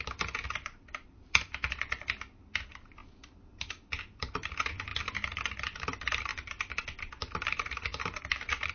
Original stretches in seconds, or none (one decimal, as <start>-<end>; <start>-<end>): 3.0-4.0; 4.9-5.8